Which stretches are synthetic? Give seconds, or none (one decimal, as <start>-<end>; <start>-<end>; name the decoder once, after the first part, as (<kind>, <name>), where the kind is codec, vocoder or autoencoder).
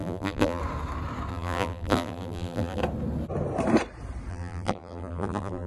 0.0-0.6 (vocoder, BigVGAN v2); 1.3-2.8; 4.3-5.7